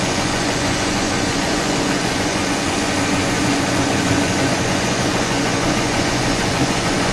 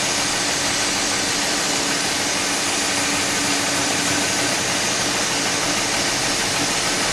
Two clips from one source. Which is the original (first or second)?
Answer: second